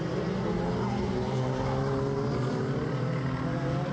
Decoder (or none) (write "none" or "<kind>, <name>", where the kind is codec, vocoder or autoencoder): none